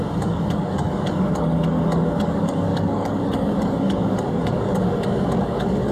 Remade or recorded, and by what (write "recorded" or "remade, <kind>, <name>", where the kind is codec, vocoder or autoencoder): remade, codec, DAC